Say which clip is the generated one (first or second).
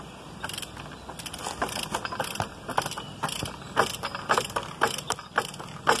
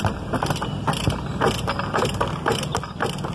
second